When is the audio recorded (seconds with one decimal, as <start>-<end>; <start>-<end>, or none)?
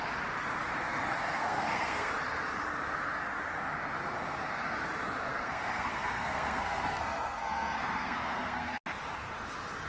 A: 0.0-1.4; 2.1-5.3; 8.8-9.9